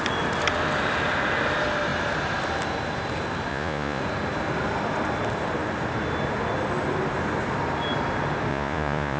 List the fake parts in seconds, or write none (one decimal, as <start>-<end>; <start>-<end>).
3.5-4.0; 8.5-9.2